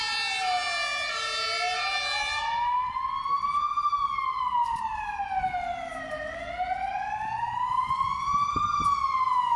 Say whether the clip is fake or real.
real